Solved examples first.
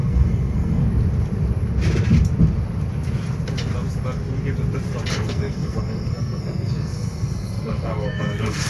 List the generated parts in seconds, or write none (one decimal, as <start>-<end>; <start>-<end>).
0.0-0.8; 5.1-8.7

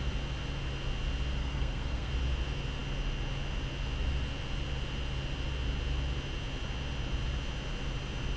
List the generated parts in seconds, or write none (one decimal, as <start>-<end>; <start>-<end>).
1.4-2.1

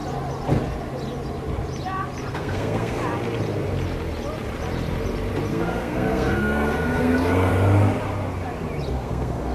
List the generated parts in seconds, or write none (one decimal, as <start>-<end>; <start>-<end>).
2.3-3.0; 5.5-7.5; 8.9-9.5

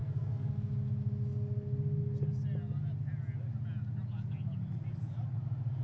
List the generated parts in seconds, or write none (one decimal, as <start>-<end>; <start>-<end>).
0.0-0.5

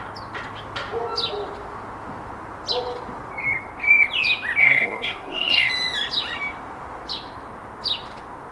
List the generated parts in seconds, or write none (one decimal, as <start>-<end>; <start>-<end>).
4.6-5.7

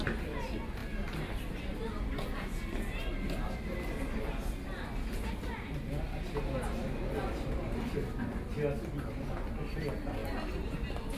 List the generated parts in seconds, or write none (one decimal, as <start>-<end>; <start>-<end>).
none

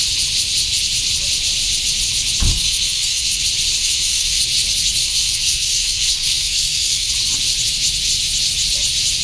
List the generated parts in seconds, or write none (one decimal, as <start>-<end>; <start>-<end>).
2.5-3.4; 3.8-4.4; 5.0-7.1